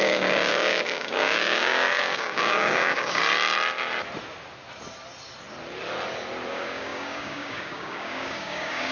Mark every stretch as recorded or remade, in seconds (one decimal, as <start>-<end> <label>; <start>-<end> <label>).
0.0-3.2 remade; 3.2-6.5 recorded; 6.5-8.9 remade